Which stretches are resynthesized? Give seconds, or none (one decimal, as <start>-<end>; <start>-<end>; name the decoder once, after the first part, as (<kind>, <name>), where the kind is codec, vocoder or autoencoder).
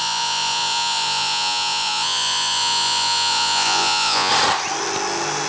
0.0-4.3 (vocoder, Vocos)